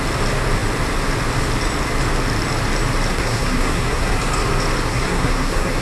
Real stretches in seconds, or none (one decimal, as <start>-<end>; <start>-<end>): 0.0-3.1; 4.1-4.9